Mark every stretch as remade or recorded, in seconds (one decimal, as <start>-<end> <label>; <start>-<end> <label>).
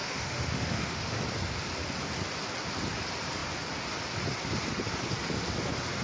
0.0-1.2 remade; 1.2-6.0 recorded